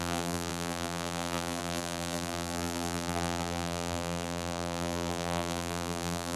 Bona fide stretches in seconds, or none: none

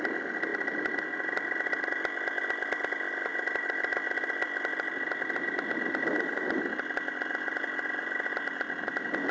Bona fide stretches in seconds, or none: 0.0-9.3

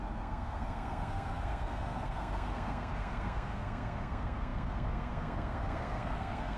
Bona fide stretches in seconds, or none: none

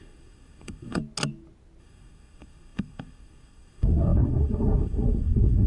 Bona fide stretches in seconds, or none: 1.0-1.8

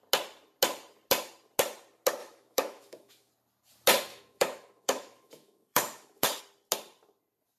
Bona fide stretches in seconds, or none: 0.0-2.2; 3.3-4.1; 6.4-7.6

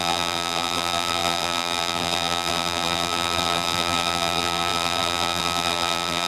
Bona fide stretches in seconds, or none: none

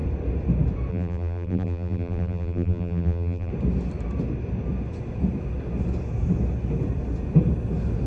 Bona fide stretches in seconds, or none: 0.0-0.9; 3.5-8.1